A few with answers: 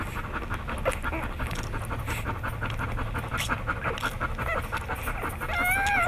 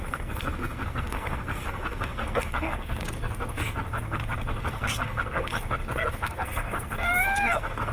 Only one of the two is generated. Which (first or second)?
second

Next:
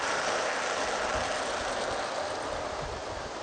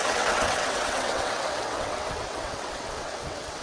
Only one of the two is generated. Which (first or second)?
second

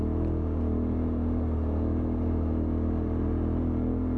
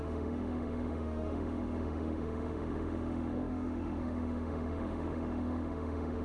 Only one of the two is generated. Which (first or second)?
second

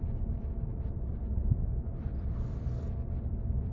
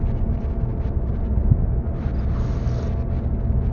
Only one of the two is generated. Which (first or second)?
first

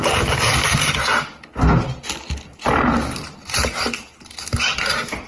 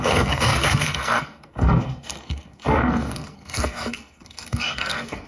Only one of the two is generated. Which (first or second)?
second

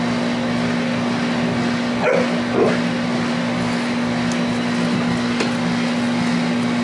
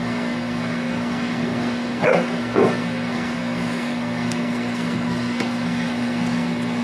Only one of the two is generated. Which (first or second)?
second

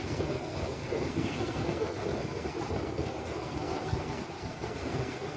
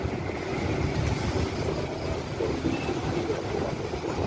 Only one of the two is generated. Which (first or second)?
first